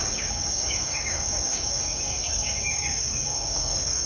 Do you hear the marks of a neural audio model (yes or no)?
yes